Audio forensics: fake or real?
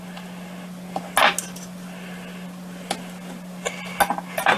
real